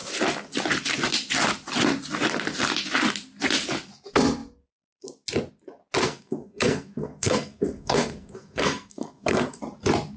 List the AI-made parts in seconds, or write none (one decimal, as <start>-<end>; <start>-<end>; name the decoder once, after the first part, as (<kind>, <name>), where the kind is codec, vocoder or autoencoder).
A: 6.0-9.6 (codec, SNAC)